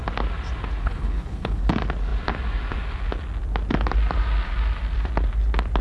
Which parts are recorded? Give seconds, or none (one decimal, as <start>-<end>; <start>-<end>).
0.0-0.8; 1.7-5.8